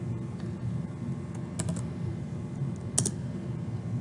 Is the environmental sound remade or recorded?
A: recorded